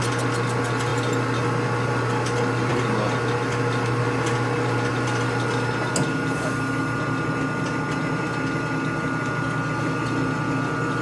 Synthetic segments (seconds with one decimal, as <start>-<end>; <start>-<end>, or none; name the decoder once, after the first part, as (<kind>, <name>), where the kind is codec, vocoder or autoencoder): none